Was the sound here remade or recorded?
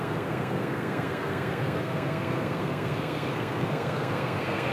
remade